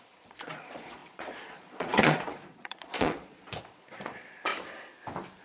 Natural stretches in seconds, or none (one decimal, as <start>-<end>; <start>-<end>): 4.5-5.4